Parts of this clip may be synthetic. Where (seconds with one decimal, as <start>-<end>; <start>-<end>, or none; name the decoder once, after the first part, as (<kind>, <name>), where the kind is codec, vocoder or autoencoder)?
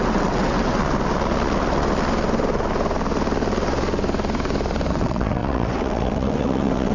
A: 0.0-0.8 (vocoder, WaveNeXt); 4.9-6.9